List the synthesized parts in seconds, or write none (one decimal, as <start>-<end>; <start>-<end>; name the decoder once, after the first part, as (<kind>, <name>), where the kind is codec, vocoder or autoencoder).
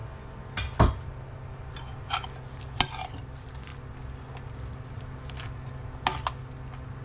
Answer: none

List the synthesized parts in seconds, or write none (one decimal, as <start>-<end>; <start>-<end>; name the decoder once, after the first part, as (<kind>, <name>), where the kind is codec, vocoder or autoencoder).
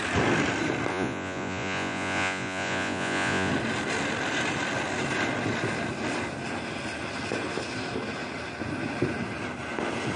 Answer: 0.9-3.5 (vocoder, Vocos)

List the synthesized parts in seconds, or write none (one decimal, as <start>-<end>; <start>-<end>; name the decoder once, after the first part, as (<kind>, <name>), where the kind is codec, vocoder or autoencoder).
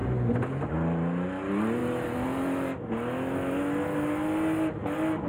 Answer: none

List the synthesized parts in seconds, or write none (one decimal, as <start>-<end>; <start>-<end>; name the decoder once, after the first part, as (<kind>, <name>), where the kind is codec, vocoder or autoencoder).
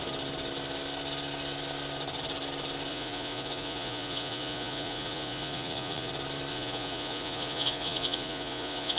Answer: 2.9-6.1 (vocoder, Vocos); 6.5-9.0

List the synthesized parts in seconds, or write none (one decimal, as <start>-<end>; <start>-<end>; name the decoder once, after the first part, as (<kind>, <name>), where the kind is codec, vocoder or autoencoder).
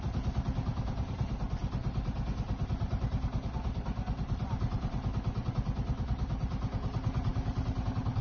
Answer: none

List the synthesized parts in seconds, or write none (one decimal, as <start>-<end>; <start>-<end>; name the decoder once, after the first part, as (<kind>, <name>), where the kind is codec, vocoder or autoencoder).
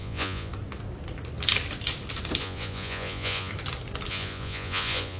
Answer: 0.0-0.5 (vocoder, Vocos); 2.4-3.5; 4.1-5.2